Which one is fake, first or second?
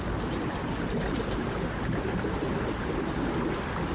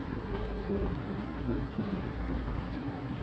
second